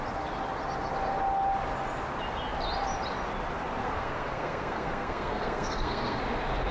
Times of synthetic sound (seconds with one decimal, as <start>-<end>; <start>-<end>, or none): 3.8-6.2